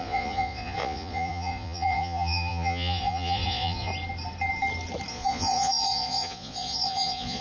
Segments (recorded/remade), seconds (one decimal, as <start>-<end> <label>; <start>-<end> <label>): 0.0-3.9 remade; 3.9-5.1 recorded; 5.1-7.4 remade